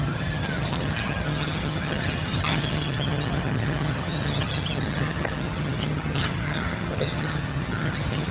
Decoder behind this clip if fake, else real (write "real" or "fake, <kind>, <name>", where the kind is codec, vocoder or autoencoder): fake, vocoder, HiFi-GAN